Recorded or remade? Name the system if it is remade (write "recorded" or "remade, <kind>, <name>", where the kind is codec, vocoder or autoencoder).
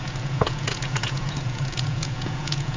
remade, vocoder, Vocos